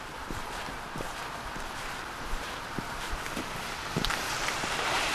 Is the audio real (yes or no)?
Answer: no